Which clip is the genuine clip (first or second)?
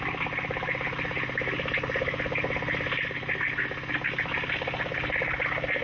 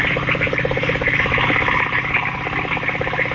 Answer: first